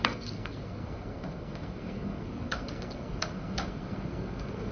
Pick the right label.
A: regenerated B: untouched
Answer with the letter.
A